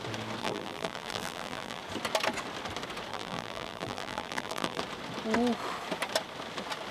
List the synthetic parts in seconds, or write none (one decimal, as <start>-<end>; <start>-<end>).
0.4-1.8; 3.1-4.8